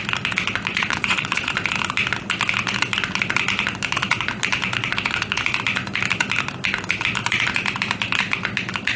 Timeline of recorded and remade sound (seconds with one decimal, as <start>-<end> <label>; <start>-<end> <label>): 0.0-0.7 recorded; 0.7-1.5 remade; 1.5-9.0 recorded